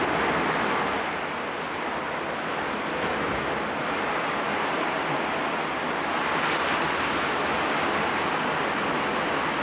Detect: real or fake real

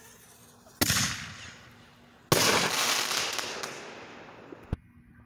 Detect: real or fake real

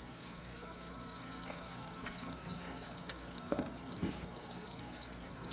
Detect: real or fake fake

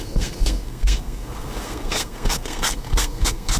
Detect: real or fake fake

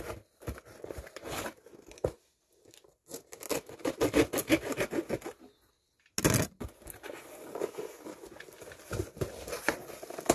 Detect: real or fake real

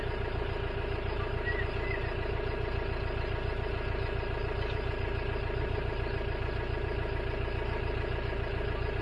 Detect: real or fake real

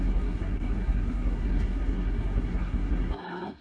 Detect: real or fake fake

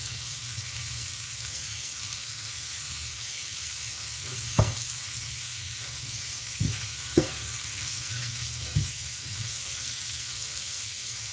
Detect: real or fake fake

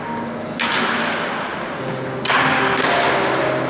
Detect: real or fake real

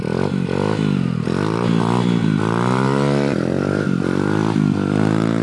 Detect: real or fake real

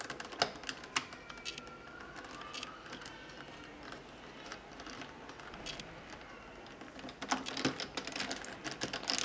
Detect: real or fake real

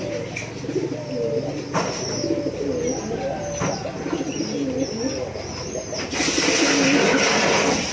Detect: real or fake real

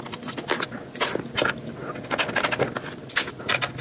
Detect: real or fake real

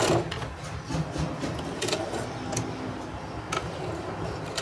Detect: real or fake real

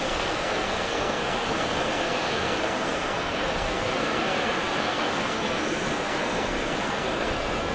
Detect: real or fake fake